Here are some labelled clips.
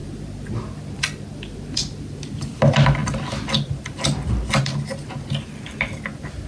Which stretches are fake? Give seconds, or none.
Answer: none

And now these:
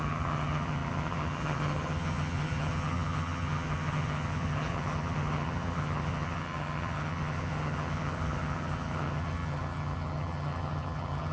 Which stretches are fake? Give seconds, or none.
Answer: 0.0-11.3 (vocoder, HiFi-GAN)

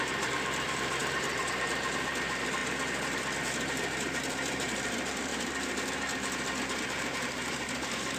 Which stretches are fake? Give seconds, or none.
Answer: 0.0-2.6 (vocoder, BigVGAN v2); 3.4-8.2

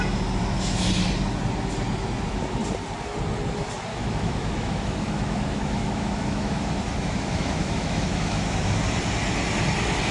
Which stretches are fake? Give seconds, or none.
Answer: 0.4-0.9 (autoencoder, DAC-VAE); 3.9-8.8

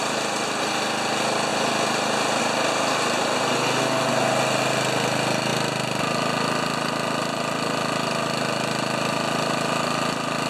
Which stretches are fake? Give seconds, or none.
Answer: none

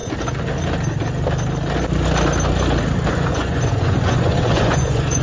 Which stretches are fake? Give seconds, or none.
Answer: 3.1-5.2 (vocoder, Vocos)